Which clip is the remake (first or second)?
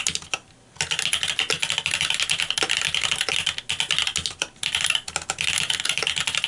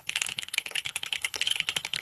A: second